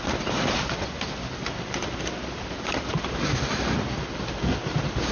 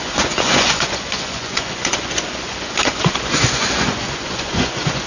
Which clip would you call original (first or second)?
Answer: first